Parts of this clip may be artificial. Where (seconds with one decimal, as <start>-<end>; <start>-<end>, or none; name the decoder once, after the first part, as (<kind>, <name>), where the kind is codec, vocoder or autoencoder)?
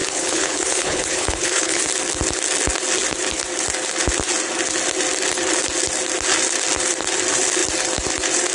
0.0-1.8 (codec, HILCodec)